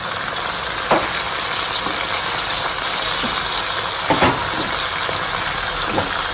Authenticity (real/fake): real